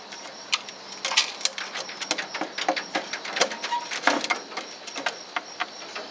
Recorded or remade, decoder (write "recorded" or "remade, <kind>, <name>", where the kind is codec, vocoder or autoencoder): recorded